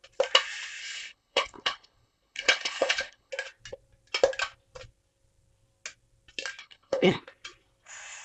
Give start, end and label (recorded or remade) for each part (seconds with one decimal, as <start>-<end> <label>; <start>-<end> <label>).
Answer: 0.0-0.8 recorded; 0.8-3.3 remade; 3.3-6.6 recorded; 6.6-7.2 remade; 7.2-8.2 recorded